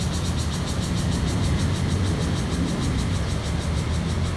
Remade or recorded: recorded